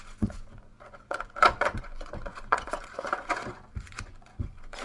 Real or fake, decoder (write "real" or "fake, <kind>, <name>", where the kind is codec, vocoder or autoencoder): fake, vocoder, Vocos